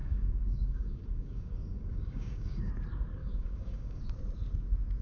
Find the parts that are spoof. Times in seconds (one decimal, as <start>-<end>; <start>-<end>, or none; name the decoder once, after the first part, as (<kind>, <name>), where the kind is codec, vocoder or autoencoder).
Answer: 0.0-2.7 (codec, DAC); 3.2-4.0